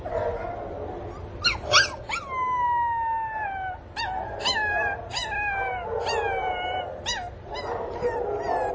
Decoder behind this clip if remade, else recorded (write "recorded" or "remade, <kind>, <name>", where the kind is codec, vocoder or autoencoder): recorded